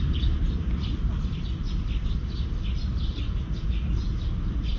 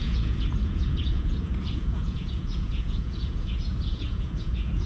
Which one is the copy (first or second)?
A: second